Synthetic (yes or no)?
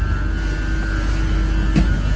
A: no